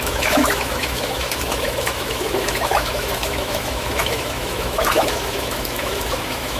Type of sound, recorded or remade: remade